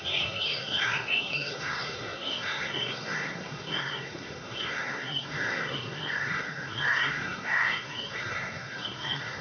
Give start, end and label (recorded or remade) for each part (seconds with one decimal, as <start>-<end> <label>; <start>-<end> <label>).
0.0-9.4 remade

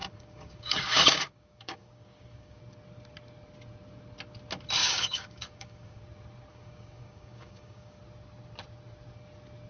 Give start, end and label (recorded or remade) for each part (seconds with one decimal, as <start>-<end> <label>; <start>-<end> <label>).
0.0-2.6 remade; 2.6-4.8 recorded; 4.8-6.0 remade; 6.0-6.5 recorded; 6.5-8.0 remade; 8.0-9.7 recorded

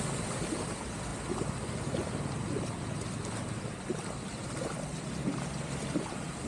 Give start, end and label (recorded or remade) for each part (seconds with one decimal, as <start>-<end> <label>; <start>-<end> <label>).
0.0-6.5 recorded

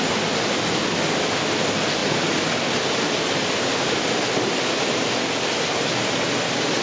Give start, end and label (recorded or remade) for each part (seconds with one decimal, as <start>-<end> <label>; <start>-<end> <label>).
0.0-6.8 recorded

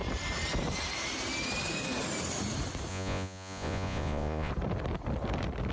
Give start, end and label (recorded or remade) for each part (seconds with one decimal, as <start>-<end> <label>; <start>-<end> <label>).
0.0-2.9 recorded; 2.9-4.5 remade; 4.5-5.7 recorded

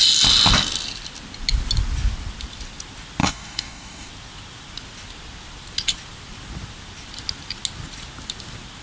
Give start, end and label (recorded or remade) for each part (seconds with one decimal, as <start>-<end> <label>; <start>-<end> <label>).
0.0-3.2 recorded; 3.2-4.1 remade; 4.1-8.8 recorded